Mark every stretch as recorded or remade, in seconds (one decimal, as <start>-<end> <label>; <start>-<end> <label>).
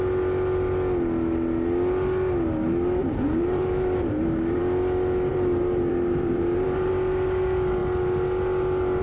0.0-3.0 recorded; 3.0-4.6 remade; 4.6-5.3 recorded; 5.3-6.9 remade; 6.9-9.0 recorded